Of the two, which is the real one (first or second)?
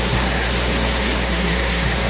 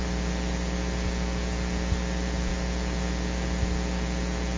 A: second